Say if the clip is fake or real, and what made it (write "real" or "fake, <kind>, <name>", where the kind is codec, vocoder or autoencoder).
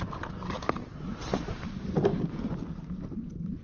real